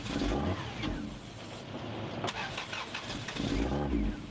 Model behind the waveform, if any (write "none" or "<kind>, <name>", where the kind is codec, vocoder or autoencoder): none